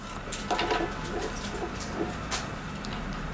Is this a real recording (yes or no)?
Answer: yes